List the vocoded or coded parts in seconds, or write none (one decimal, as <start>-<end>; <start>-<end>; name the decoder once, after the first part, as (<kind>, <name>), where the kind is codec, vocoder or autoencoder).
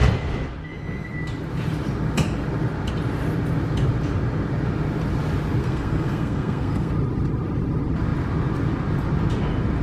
5.6-6.9 (codec, SNAC)